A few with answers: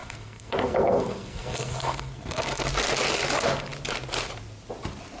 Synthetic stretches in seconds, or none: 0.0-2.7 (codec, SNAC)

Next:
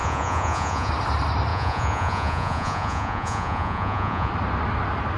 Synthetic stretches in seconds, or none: 0.0-0.9 (vocoder, Vocos); 1.5-4.3

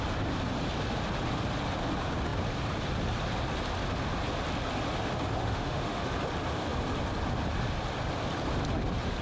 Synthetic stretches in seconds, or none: 5.4-6.0 (autoencoder, DAC-VAE)